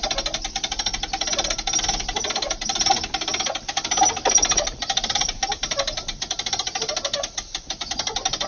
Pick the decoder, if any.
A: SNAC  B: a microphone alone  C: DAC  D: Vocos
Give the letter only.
B